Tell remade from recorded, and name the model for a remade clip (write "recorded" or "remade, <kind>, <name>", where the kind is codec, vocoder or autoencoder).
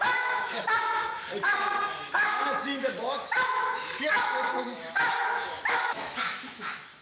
remade, autoencoder, DAC-VAE